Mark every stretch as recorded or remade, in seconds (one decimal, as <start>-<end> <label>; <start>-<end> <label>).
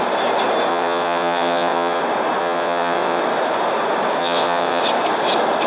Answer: 0.0-0.7 recorded; 0.7-2.0 remade; 2.0-2.4 recorded; 2.4-3.2 remade; 3.2-4.2 recorded; 4.2-4.8 remade; 4.8-5.7 recorded